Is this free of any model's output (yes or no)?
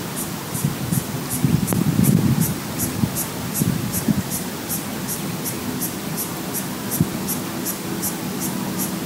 yes